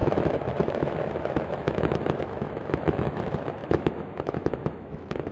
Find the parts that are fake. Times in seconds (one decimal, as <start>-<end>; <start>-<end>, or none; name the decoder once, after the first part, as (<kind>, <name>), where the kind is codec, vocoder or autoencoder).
0.0-3.2 (autoencoder, DAC-VAE); 3.6-5.3